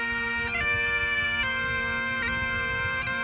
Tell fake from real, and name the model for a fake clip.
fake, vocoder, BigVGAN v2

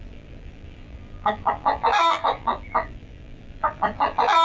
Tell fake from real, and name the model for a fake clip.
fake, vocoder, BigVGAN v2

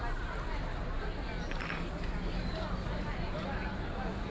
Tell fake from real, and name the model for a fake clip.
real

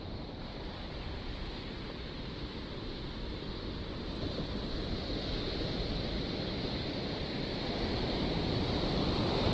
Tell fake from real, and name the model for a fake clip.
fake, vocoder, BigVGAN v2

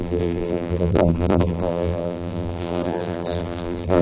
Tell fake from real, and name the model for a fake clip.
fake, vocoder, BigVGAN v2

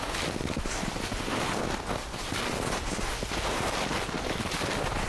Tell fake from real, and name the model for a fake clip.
real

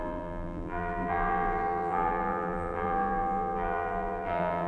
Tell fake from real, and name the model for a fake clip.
fake, vocoder, BigVGAN v2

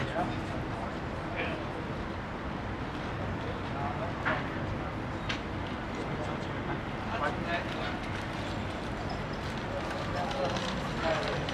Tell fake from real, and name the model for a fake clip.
real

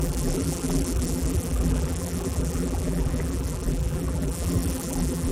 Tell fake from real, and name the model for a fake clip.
fake, vocoder, BigVGAN v2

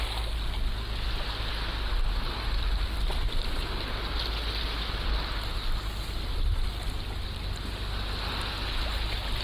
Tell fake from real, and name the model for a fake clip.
real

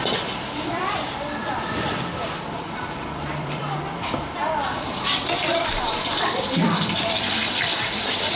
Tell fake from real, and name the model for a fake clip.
fake, vocoder, BigVGAN v2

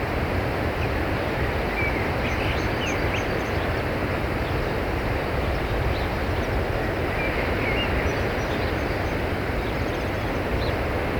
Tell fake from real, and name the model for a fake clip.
real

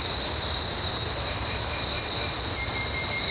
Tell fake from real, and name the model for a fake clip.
real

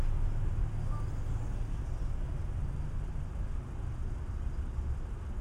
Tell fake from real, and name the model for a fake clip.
real